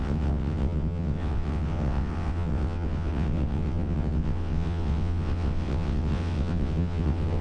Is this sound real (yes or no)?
no